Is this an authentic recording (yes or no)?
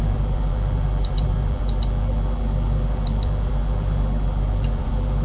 no